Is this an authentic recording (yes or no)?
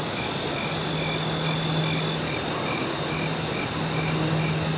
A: yes